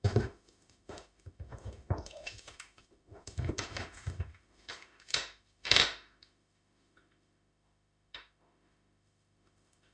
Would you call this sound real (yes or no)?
no